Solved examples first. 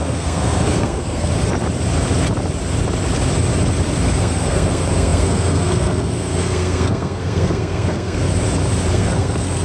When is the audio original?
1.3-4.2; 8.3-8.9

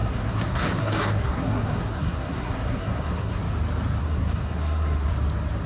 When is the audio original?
3.4-4.0; 5.1-5.7

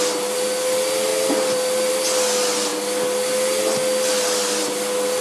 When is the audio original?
2.7-3.6

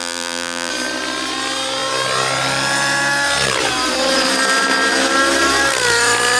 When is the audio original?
0.7-6.4

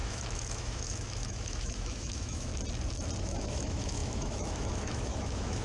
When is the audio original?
2.5-3.2

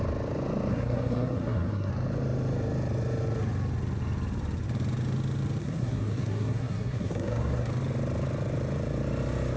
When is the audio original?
0.0-0.7; 1.9-5.6; 7.7-9.6

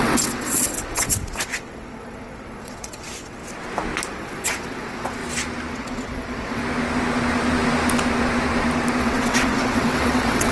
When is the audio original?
3.4-4.1; 5.2-5.7; 6.6-9.0